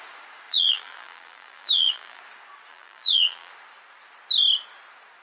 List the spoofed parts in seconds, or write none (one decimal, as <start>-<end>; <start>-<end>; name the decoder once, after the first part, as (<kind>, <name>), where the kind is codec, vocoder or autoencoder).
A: 0.5-2.2 (vocoder, BigVGAN v2); 2.7-3.5